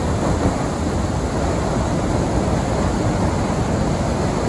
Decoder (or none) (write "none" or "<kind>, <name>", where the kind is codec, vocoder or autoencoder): none